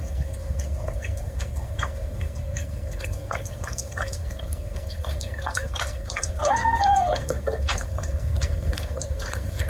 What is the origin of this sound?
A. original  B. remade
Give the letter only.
B